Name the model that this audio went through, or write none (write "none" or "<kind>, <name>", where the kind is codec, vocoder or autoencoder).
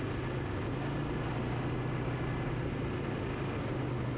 none